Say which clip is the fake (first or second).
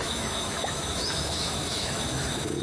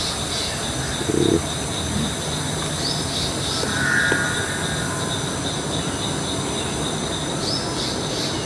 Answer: first